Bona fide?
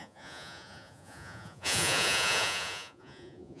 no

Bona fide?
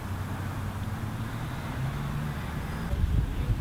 yes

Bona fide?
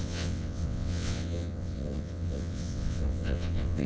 no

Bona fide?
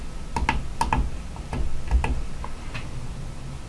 yes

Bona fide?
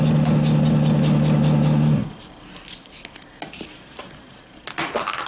yes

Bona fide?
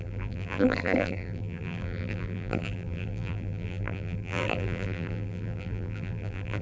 no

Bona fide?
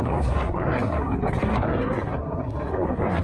no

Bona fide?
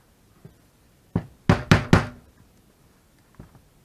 yes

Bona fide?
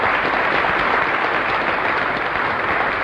no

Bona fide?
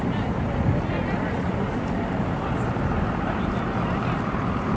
yes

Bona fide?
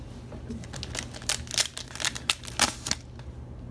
yes